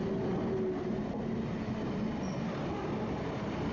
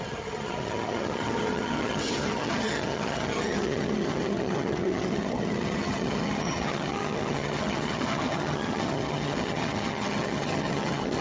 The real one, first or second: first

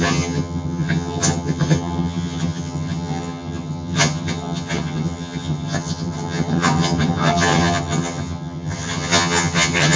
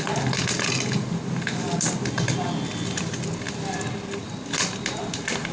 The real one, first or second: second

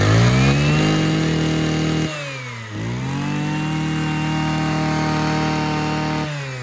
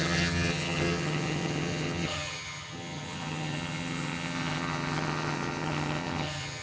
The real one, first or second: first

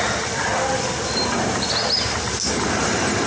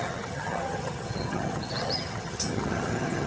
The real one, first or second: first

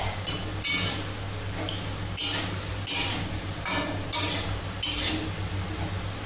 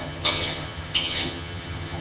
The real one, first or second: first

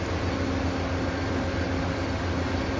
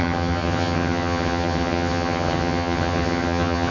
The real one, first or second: first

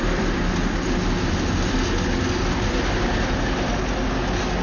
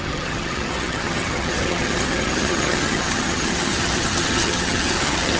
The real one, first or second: first